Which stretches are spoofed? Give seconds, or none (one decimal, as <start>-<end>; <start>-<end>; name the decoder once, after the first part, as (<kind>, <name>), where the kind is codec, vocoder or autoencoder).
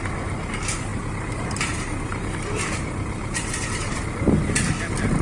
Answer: 0.9-4.0 (vocoder, BigVGAN v2)